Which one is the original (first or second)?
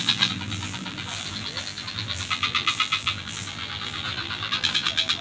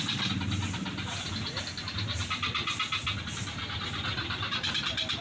second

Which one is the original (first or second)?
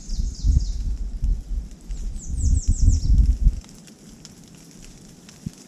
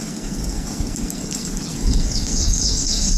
first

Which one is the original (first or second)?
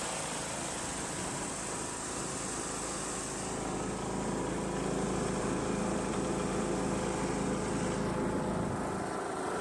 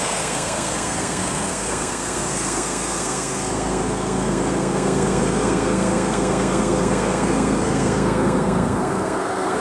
first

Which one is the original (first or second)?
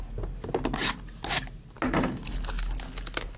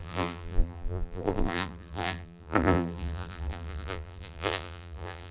first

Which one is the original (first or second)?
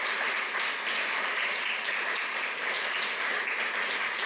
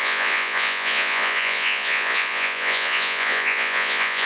first